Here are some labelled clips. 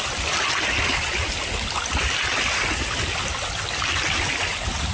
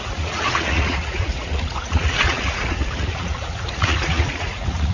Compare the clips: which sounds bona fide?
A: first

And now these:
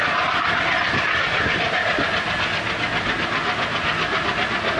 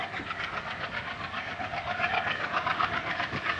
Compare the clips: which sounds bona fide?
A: first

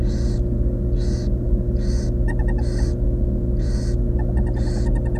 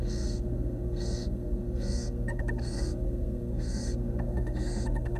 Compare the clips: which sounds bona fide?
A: first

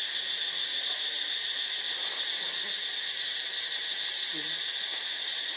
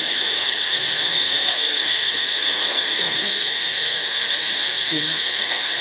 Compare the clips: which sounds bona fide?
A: first